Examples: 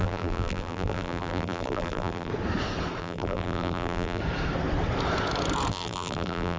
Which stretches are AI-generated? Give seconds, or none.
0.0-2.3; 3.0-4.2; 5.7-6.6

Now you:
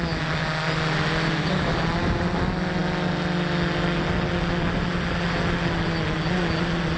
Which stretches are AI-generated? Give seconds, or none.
none

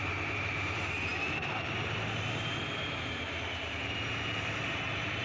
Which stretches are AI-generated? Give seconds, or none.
0.0-5.2